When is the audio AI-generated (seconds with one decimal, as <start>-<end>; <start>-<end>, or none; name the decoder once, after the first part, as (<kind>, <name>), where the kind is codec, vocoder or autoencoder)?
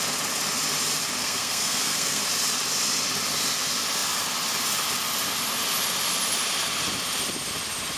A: 1.2-2.2 (codec, SNAC)